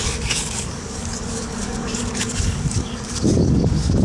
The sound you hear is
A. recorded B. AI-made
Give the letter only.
B